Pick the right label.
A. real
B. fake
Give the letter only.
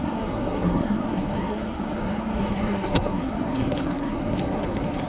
B